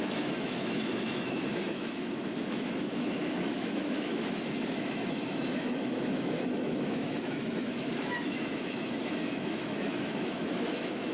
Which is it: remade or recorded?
remade